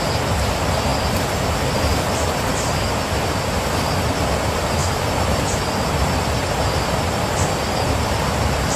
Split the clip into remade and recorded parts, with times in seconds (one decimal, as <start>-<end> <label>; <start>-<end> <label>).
0.0-8.8 recorded